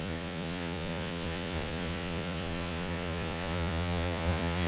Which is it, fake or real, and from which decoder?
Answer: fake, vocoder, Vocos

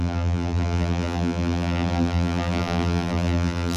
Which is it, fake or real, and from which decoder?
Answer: fake, vocoder, BigVGAN v2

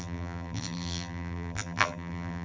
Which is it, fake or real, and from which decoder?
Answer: fake, vocoder, BigVGAN v2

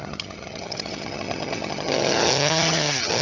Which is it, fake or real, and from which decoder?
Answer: fake, vocoder, HiFi-GAN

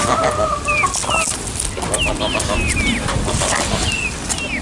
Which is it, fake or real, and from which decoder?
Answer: real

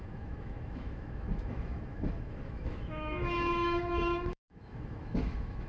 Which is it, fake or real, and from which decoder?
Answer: fake, autoencoder, DAC-VAE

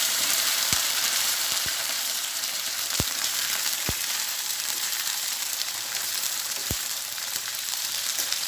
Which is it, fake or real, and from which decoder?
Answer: fake, vocoder, BigVGAN v2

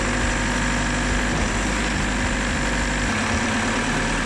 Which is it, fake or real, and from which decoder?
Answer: real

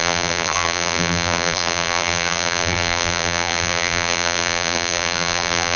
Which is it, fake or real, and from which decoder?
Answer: fake, vocoder, BigVGAN v2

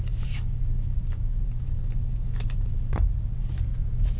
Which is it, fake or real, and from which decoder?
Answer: fake, vocoder, BigVGAN v2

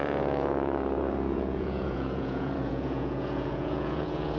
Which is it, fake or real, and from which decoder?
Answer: fake, vocoder, Vocos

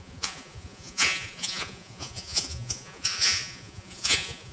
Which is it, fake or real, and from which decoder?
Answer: fake, vocoder, Vocos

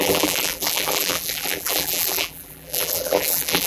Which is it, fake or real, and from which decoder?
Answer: fake, vocoder, BigVGAN v2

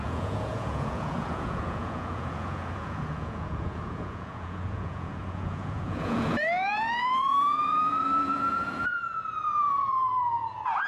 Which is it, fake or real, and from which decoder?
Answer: fake, vocoder, Vocos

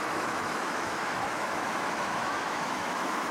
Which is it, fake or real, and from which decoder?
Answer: fake, autoencoder, DAC-VAE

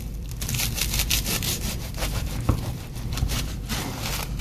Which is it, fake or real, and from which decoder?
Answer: fake, vocoder, BigVGAN v2